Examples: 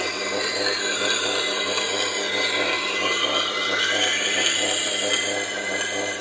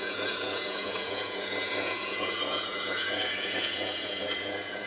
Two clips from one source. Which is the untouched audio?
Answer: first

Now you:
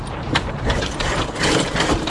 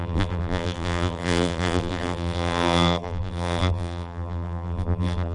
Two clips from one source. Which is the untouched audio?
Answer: first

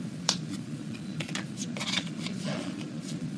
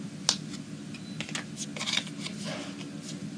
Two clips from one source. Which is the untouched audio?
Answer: second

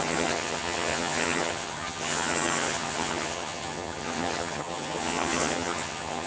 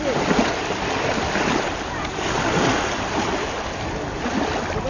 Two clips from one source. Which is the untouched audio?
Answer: second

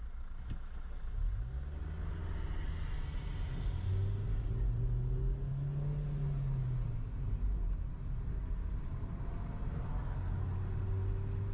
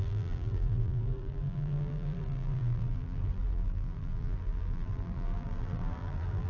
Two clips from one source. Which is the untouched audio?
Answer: first